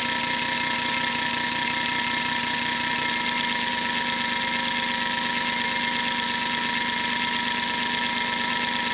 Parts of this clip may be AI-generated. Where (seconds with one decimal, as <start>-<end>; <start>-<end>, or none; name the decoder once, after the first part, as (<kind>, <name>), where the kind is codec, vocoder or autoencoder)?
none